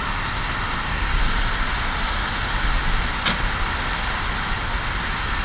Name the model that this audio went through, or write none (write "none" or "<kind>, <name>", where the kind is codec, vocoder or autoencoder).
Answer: none